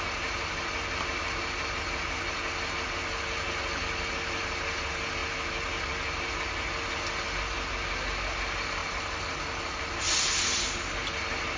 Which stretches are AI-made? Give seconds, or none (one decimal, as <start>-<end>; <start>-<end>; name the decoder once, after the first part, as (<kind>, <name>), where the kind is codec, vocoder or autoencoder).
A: 8.8-10.0 (vocoder, BigVGAN v2)